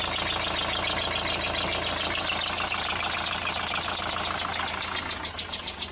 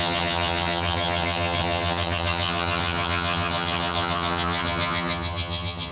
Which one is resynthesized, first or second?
second